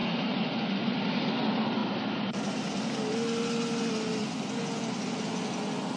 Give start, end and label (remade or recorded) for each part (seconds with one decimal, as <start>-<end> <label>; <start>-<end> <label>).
0.0-0.5 remade; 0.5-1.8 recorded; 1.8-2.6 remade; 2.6-6.0 recorded